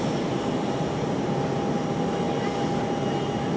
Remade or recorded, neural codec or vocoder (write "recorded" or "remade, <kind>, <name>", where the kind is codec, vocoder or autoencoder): recorded